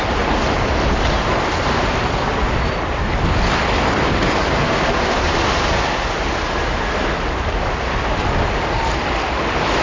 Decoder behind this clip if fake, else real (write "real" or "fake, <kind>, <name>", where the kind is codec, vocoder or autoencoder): real